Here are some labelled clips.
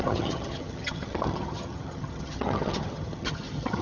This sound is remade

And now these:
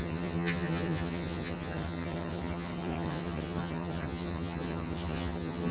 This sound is remade